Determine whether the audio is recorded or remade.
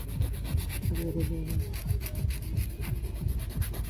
recorded